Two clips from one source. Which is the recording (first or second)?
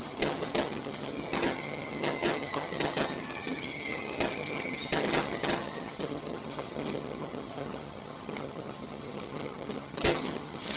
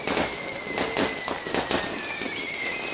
second